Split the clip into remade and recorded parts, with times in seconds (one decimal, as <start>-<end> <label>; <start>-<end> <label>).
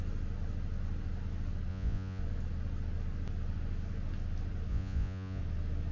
0.0-1.7 recorded; 1.7-2.2 remade; 2.2-4.7 recorded; 4.7-5.4 remade; 5.4-5.9 recorded